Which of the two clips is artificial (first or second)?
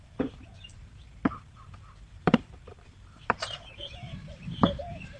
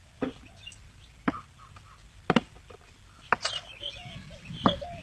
first